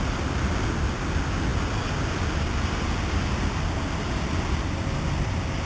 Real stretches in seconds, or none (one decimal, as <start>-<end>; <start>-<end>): 0.0-5.7